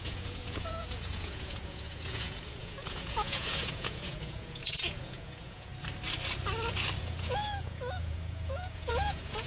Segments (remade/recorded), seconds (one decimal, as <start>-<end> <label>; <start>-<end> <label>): 0.0-5.7 remade; 5.7-7.0 recorded; 7.0-9.5 remade